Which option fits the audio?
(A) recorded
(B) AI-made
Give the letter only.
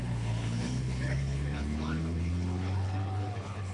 B